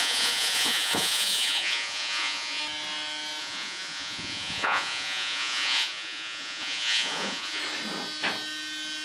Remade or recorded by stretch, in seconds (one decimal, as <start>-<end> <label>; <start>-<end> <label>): 0.0-2.6 remade; 2.6-3.4 recorded; 3.4-7.6 remade; 7.6-9.0 recorded